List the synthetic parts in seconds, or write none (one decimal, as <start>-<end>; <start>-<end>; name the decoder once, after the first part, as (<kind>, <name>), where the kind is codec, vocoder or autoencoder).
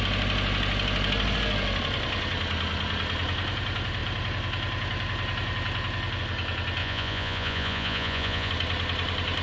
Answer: 6.8-8.5 (vocoder, Vocos)